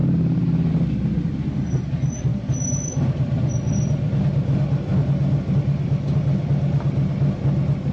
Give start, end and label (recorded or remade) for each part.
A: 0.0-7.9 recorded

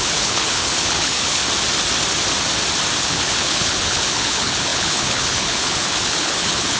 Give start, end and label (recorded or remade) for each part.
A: 0.0-1.4 remade; 1.4-3.0 recorded; 3.0-6.8 remade